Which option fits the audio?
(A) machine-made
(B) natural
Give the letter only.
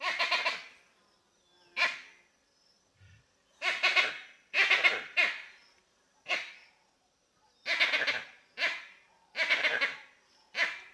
B